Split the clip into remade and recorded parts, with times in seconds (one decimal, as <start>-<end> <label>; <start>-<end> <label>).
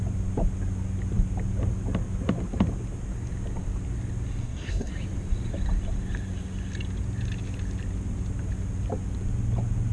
0.0-4.4 recorded; 4.4-4.9 remade; 4.9-9.9 recorded